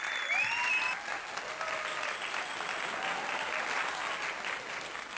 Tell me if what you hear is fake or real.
real